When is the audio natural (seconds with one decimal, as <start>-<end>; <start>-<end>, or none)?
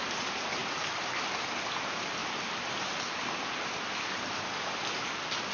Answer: 0.0-5.5